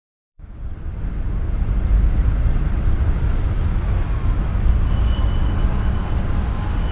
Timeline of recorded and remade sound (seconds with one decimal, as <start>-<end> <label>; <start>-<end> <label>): 0.0-0.7 remade; 0.7-3.7 recorded; 3.7-4.2 remade; 4.2-4.9 recorded; 4.9-6.9 remade